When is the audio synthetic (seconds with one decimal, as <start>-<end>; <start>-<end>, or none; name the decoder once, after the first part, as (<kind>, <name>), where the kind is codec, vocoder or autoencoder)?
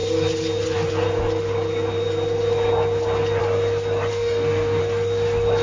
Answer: 4.1-4.8 (codec, DAC)